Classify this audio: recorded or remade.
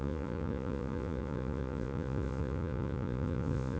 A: remade